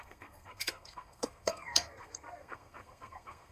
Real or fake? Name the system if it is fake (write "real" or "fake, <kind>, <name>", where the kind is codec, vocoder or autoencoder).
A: fake, codec, SNAC